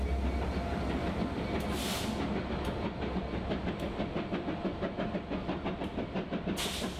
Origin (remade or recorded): recorded